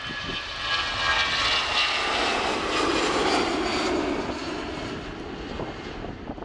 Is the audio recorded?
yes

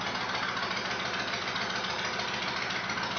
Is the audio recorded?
yes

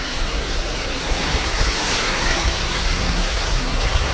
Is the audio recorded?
no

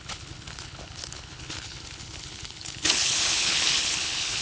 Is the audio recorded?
no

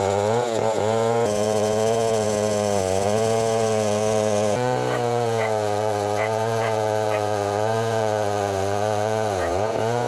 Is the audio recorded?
no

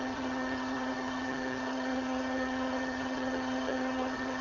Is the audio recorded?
no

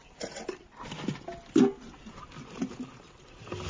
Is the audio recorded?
yes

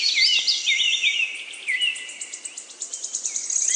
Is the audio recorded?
yes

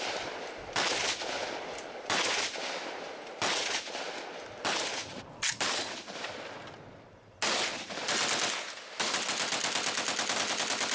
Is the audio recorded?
yes